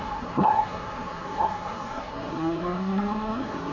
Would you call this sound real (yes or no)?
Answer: no